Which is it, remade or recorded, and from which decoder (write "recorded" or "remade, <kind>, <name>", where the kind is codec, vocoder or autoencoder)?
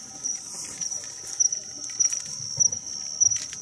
recorded